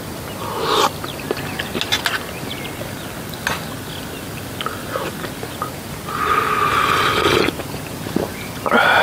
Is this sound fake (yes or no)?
no